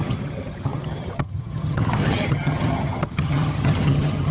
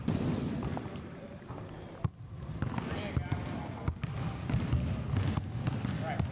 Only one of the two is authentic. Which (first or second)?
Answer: second